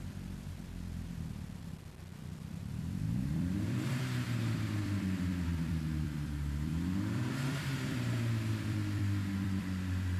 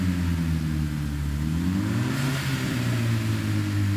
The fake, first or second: first